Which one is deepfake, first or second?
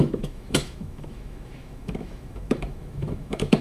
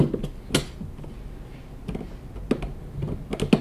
first